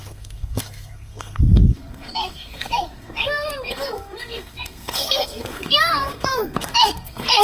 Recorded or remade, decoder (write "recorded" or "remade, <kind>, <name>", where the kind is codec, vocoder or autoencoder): remade, codec, SNAC